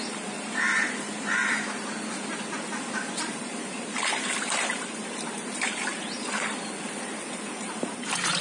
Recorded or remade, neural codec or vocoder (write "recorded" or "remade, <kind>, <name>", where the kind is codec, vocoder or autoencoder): remade, vocoder, BigVGAN v2